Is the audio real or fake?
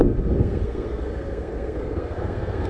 fake